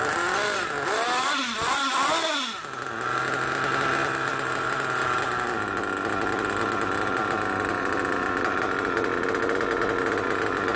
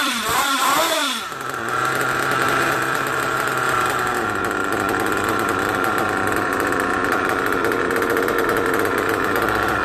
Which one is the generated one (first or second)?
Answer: second